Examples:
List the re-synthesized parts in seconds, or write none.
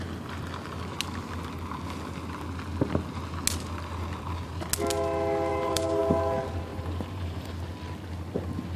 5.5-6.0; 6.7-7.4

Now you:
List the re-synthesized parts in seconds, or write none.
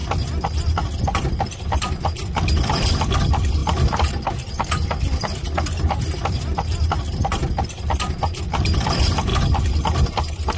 1.0-3.6; 4.9-7.4; 8.4-9.3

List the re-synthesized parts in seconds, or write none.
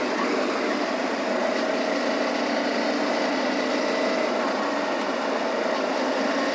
1.0-1.7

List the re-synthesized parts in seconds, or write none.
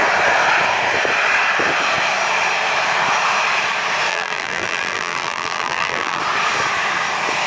4.1-6.2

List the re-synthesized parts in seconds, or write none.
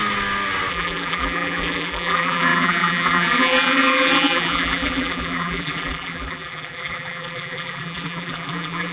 0.7-8.9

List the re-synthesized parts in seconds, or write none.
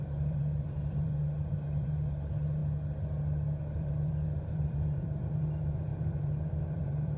0.0-2.6; 3.8-7.2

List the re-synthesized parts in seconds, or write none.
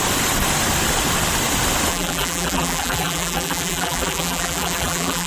1.9-5.3